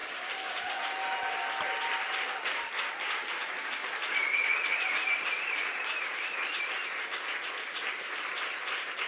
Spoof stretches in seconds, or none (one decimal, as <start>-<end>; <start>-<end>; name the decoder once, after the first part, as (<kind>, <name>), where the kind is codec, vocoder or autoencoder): 1.8-6.1 (vocoder, BigVGAN v2); 6.9-9.1